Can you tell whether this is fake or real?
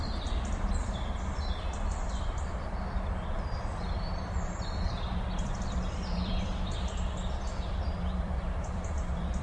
fake